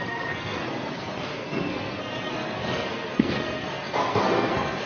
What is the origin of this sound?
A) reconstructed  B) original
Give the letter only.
A